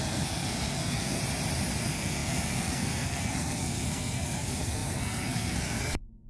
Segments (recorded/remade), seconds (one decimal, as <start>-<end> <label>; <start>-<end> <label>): 0.0-1.2 remade; 1.2-1.8 recorded; 1.8-6.3 remade